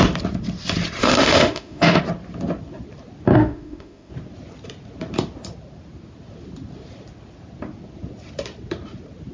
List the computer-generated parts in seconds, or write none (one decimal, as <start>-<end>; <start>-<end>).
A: 1.0-2.0; 3.3-4.1